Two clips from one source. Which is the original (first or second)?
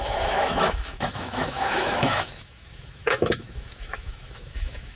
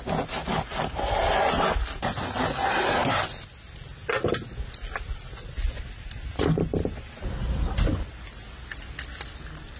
second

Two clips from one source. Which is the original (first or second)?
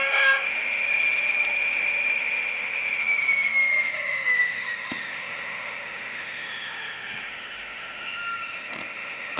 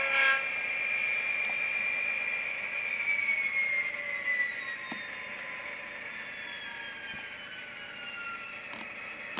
second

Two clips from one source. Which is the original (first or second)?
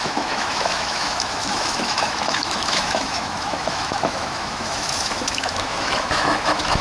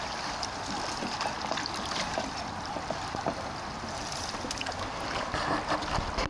second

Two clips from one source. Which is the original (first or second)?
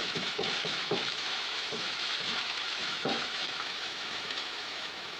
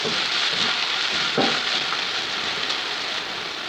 second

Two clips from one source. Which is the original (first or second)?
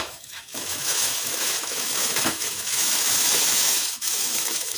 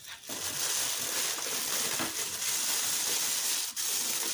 second